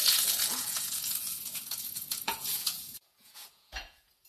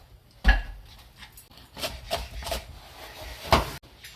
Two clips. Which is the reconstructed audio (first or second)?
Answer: first